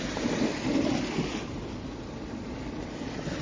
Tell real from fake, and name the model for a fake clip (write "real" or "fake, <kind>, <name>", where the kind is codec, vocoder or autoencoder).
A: real